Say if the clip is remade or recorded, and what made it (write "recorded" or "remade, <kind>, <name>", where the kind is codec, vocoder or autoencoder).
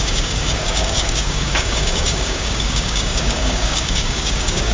remade, codec, DAC